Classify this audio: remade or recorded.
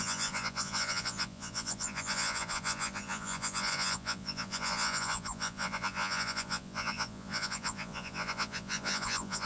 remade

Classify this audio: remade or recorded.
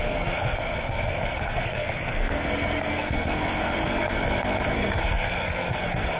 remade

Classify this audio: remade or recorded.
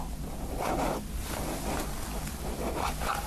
recorded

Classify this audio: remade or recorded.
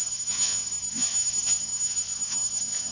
remade